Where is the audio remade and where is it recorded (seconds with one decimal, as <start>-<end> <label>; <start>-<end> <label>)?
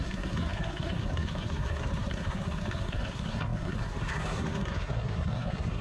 0.0-5.8 remade